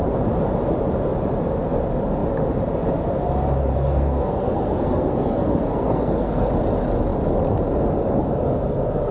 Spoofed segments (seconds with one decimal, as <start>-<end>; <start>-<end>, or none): 3.6-6.5